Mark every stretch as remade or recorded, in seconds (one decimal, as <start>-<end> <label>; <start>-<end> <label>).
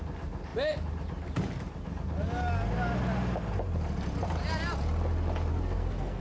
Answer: 0.0-5.5 recorded; 5.5-6.2 remade